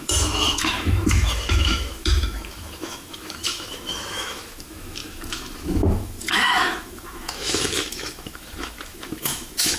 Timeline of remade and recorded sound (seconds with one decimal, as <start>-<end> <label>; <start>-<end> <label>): 0.0-9.8 remade